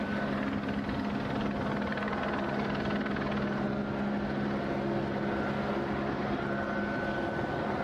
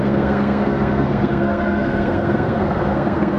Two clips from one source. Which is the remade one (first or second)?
second